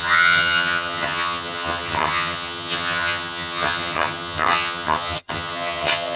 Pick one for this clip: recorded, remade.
remade